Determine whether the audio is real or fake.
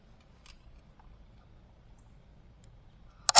real